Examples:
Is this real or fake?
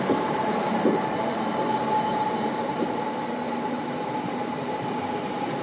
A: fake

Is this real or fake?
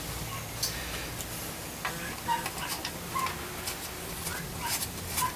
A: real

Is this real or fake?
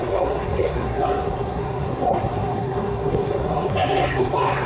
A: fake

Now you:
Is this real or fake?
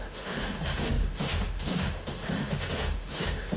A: fake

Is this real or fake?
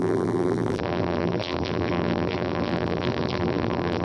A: fake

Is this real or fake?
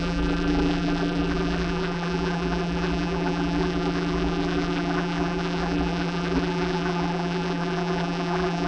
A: fake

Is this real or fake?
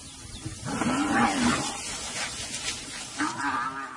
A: real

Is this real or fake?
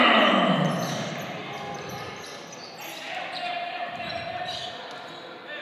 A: real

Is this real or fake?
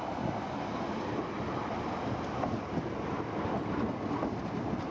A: real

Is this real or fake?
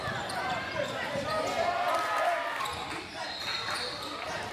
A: real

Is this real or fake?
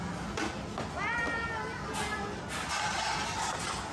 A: real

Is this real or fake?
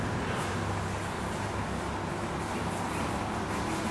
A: real